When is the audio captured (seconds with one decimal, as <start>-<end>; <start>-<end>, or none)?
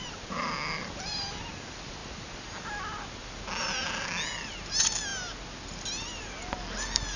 0.0-7.2